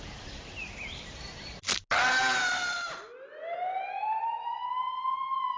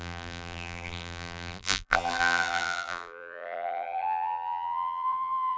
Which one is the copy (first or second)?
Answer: second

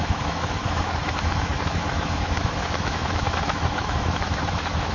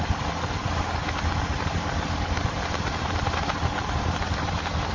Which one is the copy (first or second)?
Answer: first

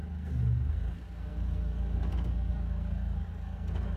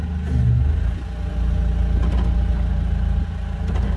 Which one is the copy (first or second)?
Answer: first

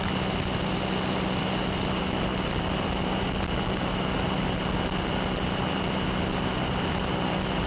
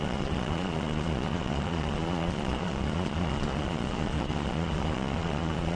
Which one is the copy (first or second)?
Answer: second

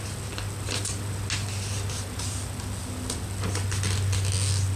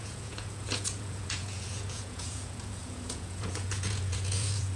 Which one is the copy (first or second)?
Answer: second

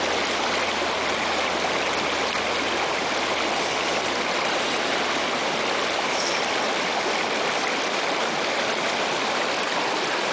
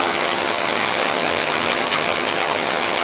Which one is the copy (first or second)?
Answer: second